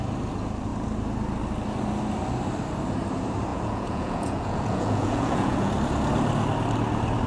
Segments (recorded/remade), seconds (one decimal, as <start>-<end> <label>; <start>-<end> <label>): 0.0-3.5 recorded; 3.5-5.7 remade; 5.7-7.3 recorded